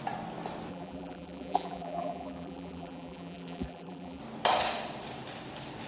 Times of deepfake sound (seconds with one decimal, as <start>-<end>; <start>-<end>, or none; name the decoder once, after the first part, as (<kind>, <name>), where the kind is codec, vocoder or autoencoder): 0.7-4.2 (vocoder, BigVGAN v2)